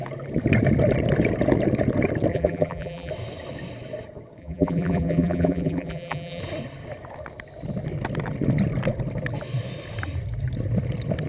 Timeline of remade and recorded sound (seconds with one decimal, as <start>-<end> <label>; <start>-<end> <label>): 0.0-2.3 recorded; 2.3-3.1 remade; 3.1-4.4 recorded; 4.4-6.4 remade; 6.4-11.3 recorded